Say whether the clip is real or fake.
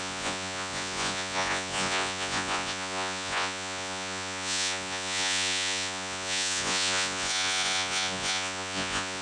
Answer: fake